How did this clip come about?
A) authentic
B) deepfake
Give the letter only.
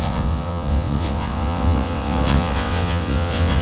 B